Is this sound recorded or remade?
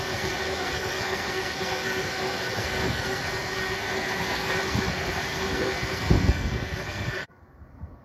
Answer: remade